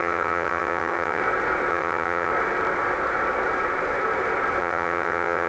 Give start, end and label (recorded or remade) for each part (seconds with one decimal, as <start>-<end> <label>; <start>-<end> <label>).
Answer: 0.0-1.2 remade; 1.2-1.7 recorded; 1.7-2.3 remade; 2.3-4.6 recorded; 4.6-5.5 remade